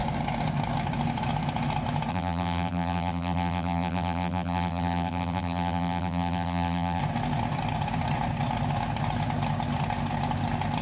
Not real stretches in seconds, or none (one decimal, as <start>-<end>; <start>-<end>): 2.1-7.0